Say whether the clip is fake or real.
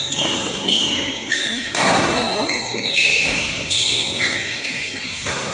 fake